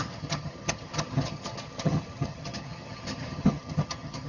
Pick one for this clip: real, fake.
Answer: fake